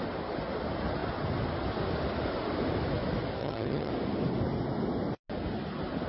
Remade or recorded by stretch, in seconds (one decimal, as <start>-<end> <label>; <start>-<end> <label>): 0.0-3.4 recorded; 3.4-3.9 remade; 3.9-6.1 recorded